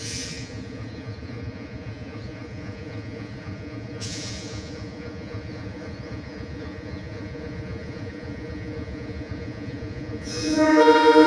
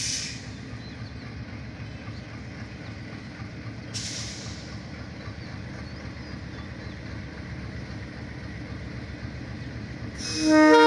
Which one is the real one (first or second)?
second